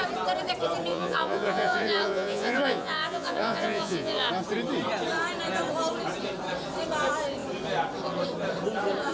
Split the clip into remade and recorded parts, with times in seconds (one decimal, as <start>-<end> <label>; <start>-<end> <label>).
0.0-0.9 recorded; 0.9-4.3 remade; 4.3-9.1 recorded